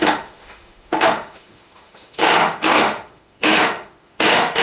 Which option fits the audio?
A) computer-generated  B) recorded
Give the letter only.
A